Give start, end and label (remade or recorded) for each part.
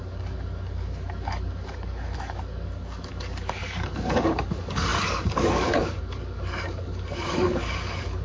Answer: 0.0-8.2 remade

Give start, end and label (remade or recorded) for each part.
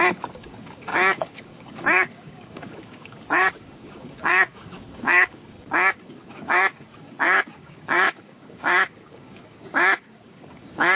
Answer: 0.0-11.0 remade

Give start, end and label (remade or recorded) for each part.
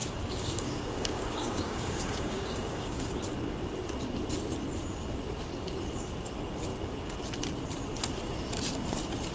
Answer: 0.0-3.1 remade; 3.1-9.3 recorded